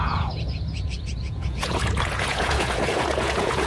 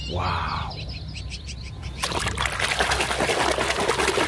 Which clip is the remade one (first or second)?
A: first